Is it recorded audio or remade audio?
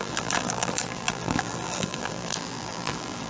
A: remade